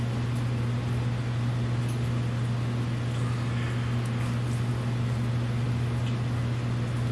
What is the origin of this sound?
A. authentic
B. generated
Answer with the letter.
A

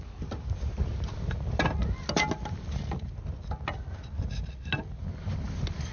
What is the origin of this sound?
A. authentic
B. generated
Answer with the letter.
A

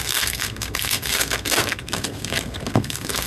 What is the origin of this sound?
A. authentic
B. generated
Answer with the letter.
B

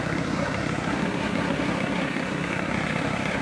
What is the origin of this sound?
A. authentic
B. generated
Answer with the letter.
B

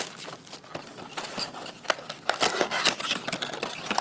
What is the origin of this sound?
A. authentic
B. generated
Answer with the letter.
A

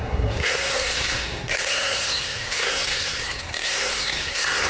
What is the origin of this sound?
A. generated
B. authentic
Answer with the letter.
A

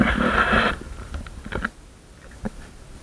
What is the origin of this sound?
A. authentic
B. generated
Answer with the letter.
A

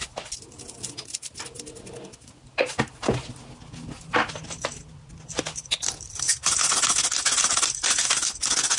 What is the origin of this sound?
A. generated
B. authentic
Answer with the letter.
B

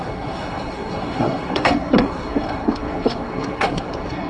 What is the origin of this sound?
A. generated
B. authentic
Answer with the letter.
A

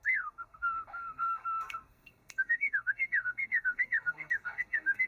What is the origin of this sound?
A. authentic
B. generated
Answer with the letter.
B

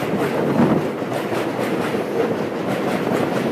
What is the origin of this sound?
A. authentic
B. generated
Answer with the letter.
A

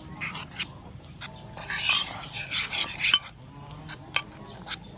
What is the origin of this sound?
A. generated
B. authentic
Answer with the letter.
B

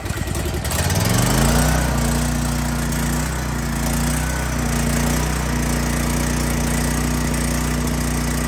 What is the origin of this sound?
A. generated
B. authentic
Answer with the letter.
B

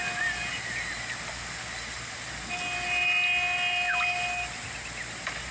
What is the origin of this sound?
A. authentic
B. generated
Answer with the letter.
A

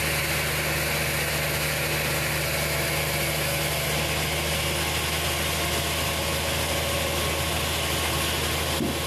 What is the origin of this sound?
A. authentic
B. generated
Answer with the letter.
A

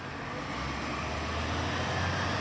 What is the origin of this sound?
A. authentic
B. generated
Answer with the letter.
A